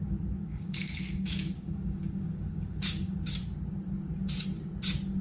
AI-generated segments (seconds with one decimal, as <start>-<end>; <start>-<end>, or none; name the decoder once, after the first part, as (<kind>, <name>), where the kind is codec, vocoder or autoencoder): 0.4-3.3 (codec, DAC)